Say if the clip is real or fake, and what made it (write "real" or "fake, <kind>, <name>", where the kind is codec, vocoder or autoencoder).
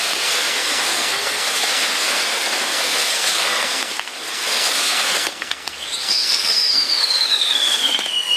fake, codec, SNAC